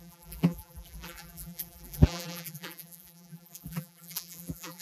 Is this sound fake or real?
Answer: fake